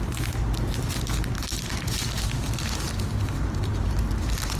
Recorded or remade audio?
recorded